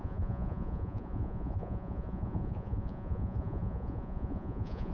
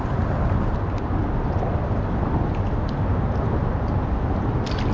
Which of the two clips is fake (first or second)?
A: first